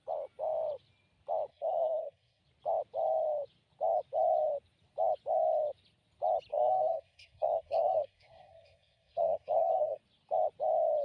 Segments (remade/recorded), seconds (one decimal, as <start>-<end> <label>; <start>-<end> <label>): 0.0-1.5 recorded; 1.5-2.4 remade; 2.4-6.5 recorded; 6.5-10.0 remade; 10.0-11.0 recorded

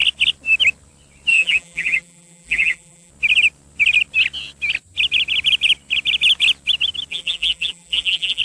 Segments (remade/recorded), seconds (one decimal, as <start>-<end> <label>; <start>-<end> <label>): 0.0-1.3 recorded; 1.3-3.1 remade; 3.1-7.1 recorded; 7.1-8.4 remade